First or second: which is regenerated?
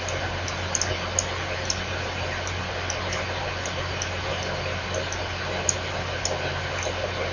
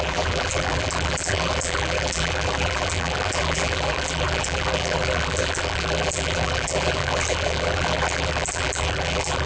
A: second